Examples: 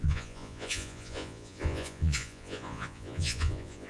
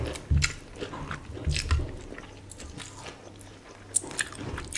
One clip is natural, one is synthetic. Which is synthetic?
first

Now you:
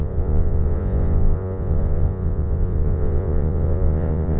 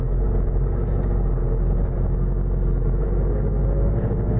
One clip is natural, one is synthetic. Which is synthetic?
first